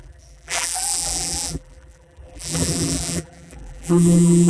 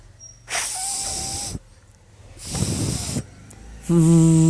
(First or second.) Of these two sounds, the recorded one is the second